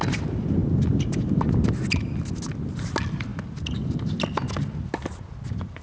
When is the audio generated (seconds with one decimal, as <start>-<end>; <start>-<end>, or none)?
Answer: none